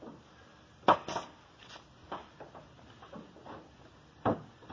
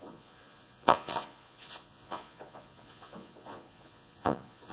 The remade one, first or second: second